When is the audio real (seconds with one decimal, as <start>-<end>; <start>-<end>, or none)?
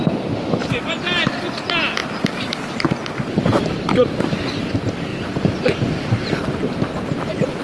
0.0-0.6; 1.3-2.0; 4.2-5.1